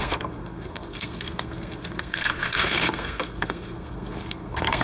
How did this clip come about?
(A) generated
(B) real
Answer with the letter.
A